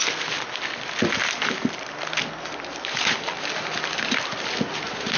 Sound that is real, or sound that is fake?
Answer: real